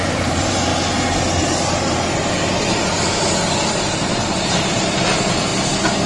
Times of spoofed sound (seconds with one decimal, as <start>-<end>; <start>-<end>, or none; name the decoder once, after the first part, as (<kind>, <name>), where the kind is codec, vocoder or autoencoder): 0.0-0.7 (vocoder, BigVGAN v2); 2.5-5.5